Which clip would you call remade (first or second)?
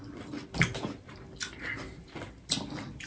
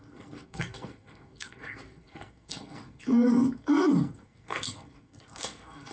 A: second